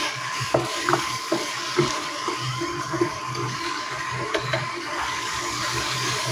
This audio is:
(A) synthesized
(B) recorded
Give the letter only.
A